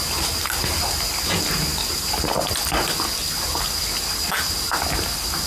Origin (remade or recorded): recorded